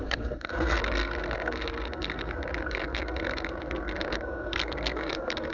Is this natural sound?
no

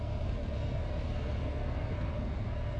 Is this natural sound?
no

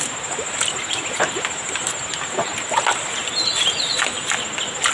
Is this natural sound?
yes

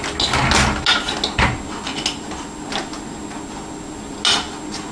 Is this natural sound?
yes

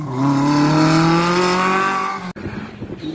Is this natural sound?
yes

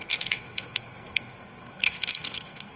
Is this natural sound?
no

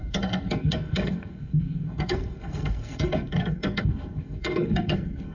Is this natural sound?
no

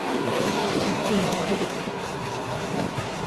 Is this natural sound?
no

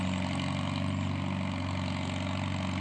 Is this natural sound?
yes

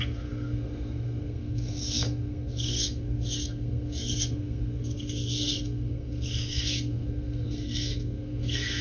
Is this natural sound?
no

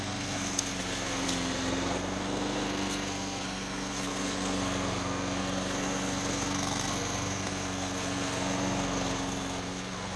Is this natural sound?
no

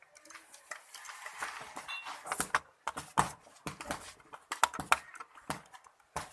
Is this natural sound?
yes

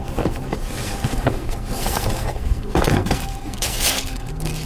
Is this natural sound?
no